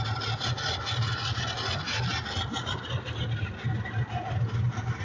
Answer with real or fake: real